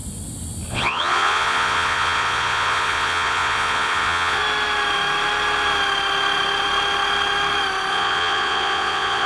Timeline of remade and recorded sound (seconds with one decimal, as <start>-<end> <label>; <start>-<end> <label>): 0.0-0.7 recorded; 0.7-4.4 remade; 4.4-7.9 recorded; 7.9-9.3 remade